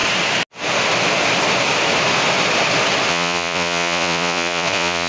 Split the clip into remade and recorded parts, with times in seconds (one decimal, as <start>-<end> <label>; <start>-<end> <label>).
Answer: 0.0-3.1 recorded; 3.1-5.1 remade